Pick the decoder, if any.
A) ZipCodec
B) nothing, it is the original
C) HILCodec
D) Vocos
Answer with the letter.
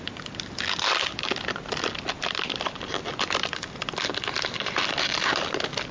B